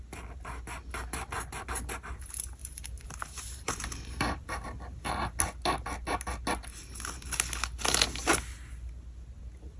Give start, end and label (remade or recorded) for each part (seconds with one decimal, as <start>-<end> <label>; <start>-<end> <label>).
0.0-2.6 recorded; 2.6-5.4 remade; 5.4-9.8 recorded